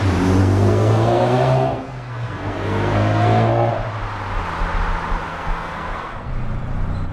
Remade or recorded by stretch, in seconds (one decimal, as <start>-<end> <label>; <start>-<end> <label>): 0.0-0.4 recorded; 0.4-3.7 remade; 3.7-5.3 recorded; 5.3-6.3 remade; 6.3-7.1 recorded